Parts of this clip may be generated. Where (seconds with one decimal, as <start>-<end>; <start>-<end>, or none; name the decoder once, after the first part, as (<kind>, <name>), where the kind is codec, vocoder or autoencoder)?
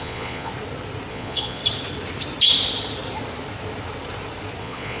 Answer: 0.0-0.5 (vocoder, Vocos); 1.1-1.6; 4.6-5.0